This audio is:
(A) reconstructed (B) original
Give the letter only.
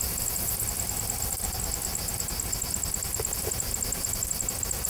B